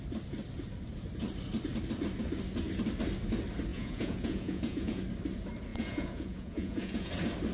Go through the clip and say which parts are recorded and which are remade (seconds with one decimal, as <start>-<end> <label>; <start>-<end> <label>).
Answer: 0.0-3.7 recorded; 3.7-5.0 remade; 5.0-5.7 recorded; 5.7-7.1 remade; 7.1-7.5 recorded